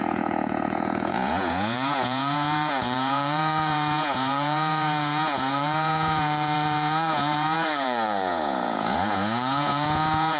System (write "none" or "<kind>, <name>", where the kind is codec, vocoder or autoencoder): vocoder, Vocos